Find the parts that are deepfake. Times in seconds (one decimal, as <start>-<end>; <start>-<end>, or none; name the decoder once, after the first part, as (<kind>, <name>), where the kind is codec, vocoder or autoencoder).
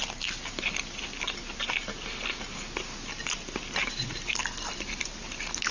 3.8-5.7 (vocoder, BigVGAN v2)